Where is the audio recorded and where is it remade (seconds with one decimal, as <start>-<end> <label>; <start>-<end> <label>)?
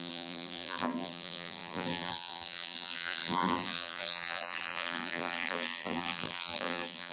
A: 0.0-7.1 remade